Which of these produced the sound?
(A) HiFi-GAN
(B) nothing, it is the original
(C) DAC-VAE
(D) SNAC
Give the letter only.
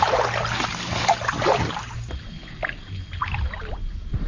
B